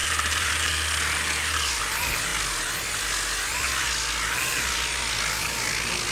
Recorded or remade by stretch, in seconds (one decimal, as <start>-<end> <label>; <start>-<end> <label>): 0.0-0.7 remade; 0.7-6.1 recorded